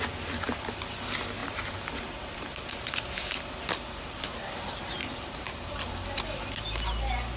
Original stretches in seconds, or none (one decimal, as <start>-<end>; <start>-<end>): 0.0-1.4; 3.3-5.0; 6.2-7.4